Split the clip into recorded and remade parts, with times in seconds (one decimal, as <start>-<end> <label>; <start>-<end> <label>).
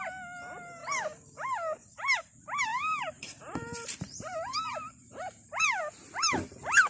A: 0.0-2.7 recorded; 2.7-5.8 remade; 5.8-6.9 recorded